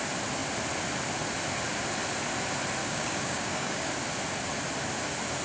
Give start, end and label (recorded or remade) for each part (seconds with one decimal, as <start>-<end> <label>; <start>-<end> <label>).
0.0-2.8 recorded; 2.8-3.9 remade; 3.9-5.4 recorded